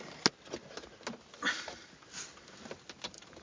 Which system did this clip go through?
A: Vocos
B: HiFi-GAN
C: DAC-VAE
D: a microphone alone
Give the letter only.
D